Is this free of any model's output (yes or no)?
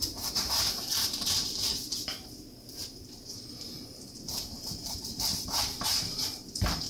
no